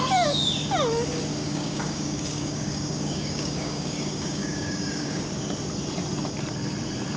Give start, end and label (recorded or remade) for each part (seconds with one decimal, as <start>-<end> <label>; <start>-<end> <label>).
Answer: 0.0-1.4 recorded; 1.4-5.2 remade; 5.2-7.2 recorded

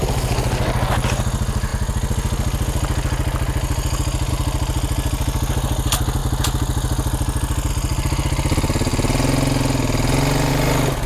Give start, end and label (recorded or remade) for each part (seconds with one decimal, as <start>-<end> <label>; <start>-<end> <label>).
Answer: 0.0-11.1 recorded

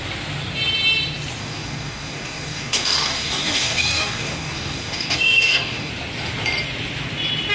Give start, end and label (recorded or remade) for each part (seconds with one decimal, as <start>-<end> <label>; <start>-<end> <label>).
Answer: 0.0-1.4 recorded; 1.4-5.9 remade; 5.9-7.5 recorded